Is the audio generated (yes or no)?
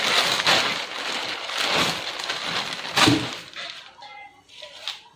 no